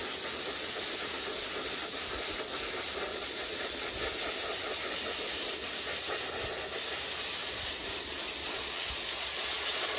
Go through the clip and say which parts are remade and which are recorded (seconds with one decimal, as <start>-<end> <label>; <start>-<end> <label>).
0.0-3.1 recorded; 3.1-3.9 remade; 3.9-8.4 recorded; 8.4-10.0 remade